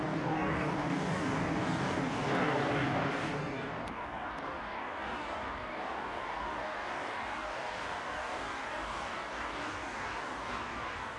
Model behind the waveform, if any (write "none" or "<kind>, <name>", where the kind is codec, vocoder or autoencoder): codec, DAC